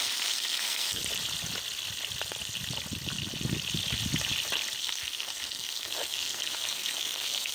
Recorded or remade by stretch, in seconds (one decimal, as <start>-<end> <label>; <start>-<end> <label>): 0.0-1.0 remade; 1.0-4.8 recorded; 4.8-7.5 remade